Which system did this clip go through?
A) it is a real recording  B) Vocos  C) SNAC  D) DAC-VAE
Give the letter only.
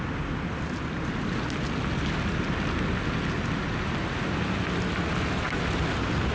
A